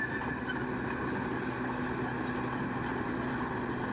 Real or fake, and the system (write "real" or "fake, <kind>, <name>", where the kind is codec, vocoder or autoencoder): real